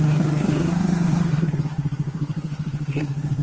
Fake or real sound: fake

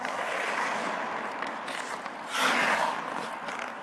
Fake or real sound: real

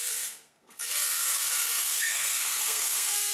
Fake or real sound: fake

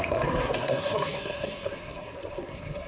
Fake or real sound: fake